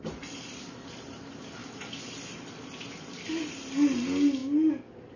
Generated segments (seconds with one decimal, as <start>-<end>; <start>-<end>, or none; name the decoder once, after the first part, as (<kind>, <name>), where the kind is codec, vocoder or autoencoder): 0.0-1.6 (vocoder, BigVGAN v2); 3.4-4.4